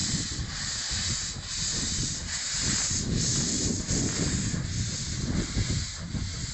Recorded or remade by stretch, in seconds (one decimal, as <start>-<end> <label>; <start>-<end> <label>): 0.0-6.5 recorded